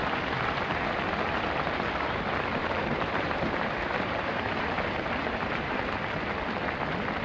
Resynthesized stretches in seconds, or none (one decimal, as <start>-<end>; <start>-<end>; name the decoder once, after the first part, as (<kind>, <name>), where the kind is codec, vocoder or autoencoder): 0.0-0.8 (vocoder, BigVGAN v2); 2.6-5.8